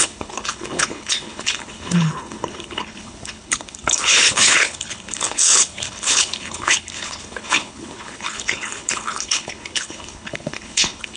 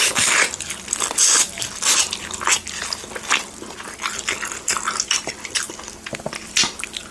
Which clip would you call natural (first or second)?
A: second